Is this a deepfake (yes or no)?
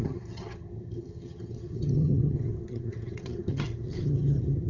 yes